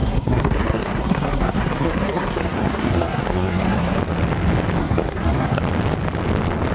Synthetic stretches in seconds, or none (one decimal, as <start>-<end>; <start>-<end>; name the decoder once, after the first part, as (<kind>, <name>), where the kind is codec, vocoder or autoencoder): 0.0-4.0 (codec, SNAC); 4.8-5.6